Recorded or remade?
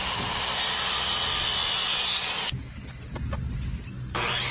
recorded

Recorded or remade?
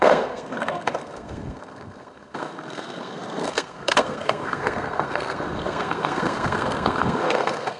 remade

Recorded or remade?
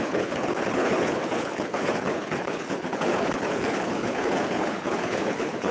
remade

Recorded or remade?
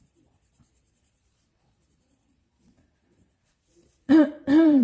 remade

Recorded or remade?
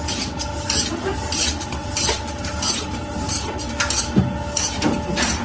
recorded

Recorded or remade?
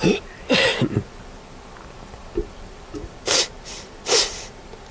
remade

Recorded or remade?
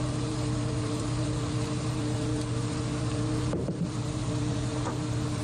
remade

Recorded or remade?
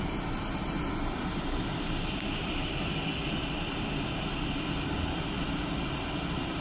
recorded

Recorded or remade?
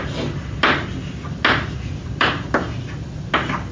recorded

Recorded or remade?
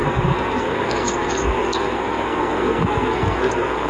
remade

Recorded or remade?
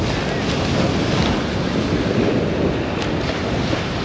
recorded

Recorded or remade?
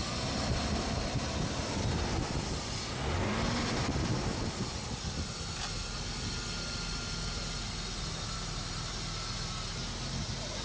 recorded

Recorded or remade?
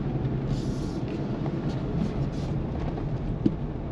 recorded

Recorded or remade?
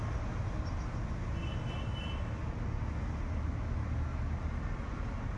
recorded